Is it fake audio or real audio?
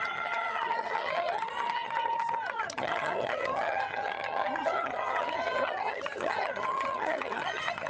fake